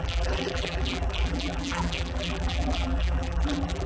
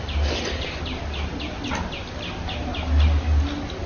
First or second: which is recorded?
second